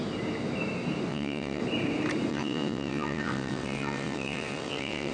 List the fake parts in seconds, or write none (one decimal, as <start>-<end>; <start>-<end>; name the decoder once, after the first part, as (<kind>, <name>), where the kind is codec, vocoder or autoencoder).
1.1-1.6 (vocoder, WaveNeXt); 2.3-5.1